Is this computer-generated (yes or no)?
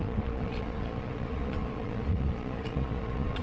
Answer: yes